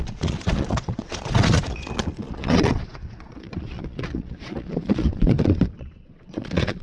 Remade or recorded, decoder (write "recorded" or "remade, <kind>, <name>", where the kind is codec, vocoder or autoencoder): remade, vocoder, Vocos